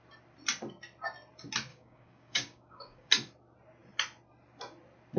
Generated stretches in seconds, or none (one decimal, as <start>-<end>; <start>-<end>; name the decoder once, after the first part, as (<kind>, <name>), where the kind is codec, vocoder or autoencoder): 1.7-3.1 (codec, DAC)